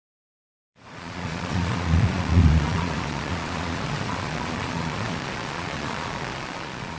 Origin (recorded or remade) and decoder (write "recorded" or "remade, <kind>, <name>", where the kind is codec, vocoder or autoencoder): remade, vocoder, Vocos